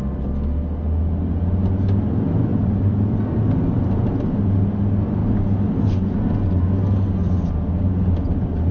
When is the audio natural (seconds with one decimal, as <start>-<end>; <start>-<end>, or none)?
0.0-2.5; 3.4-8.7